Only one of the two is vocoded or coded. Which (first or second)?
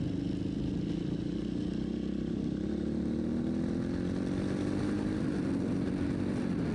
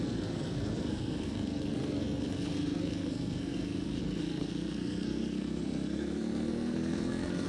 second